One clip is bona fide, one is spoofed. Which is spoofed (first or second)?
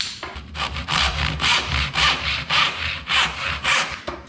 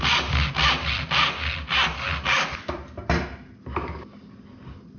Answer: first